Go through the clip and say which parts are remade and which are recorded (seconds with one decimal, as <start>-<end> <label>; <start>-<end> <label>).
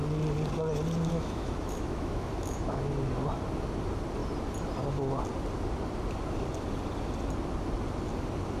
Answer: 0.0-1.1 recorded; 1.1-2.9 remade; 2.9-8.6 recorded